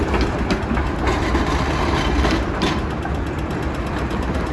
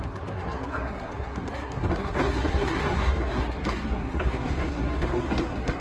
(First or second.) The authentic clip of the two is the first